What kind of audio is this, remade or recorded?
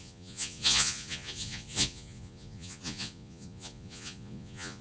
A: remade